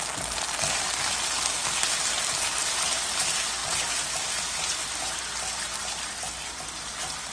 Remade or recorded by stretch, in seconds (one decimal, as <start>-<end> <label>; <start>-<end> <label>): 0.0-7.3 recorded